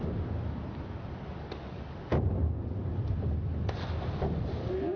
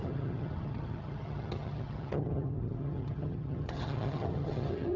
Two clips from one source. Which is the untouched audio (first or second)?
first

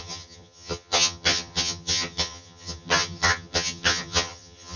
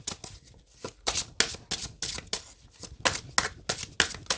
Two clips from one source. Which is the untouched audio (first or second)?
second